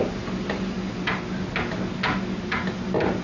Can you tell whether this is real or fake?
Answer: real